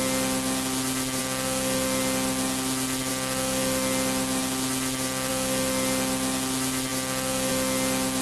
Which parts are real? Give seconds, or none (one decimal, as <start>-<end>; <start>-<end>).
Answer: 0.0-8.2